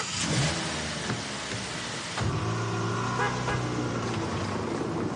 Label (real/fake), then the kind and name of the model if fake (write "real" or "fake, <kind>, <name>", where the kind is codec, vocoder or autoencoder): real